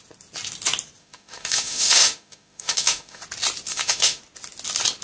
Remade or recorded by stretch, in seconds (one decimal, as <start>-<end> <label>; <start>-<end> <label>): 0.0-1.0 recorded; 1.0-3.2 remade; 3.2-3.7 recorded; 3.7-4.2 remade; 4.2-5.0 recorded